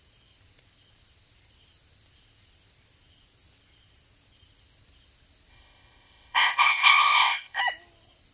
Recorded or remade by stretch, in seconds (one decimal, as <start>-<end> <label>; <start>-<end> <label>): 0.0-5.5 recorded; 5.5-7.6 remade; 7.6-8.3 recorded